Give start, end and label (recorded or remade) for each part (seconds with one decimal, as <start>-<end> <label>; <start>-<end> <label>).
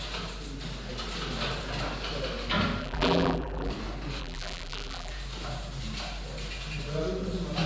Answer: 0.0-2.8 recorded; 2.8-3.7 remade; 3.7-4.2 recorded; 4.2-5.1 remade; 5.1-7.7 recorded